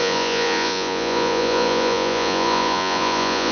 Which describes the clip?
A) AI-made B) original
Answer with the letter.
A